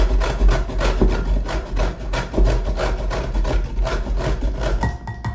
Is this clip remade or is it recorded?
recorded